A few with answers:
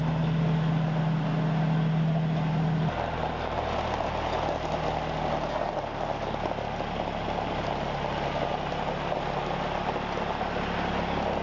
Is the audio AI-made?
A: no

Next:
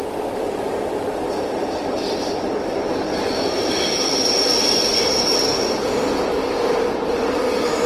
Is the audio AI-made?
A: no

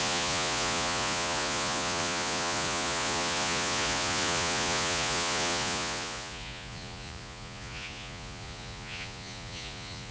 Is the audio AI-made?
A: yes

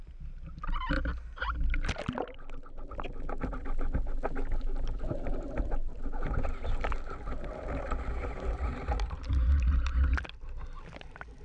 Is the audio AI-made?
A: no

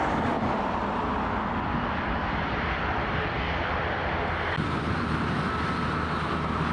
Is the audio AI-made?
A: no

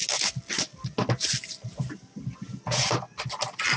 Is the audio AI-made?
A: no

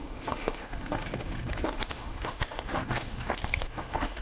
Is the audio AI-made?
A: yes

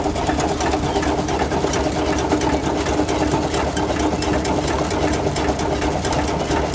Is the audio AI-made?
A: no